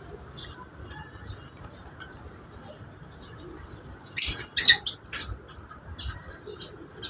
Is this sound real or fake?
real